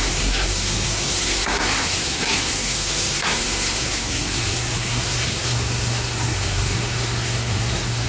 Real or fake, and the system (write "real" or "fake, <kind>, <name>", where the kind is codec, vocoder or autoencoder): fake, codec, SNAC